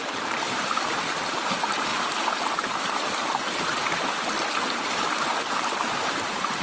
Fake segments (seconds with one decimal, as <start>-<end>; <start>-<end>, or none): 0.0-1.9; 5.9-6.6